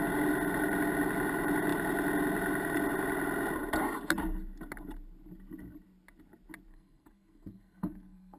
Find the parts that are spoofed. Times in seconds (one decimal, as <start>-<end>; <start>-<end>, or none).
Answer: 6.7-8.4